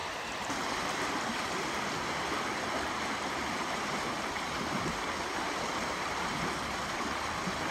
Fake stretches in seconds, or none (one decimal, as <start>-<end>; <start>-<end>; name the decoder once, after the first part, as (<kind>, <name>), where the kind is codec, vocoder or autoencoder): 0.0-1.5 (vocoder, BigVGAN v2)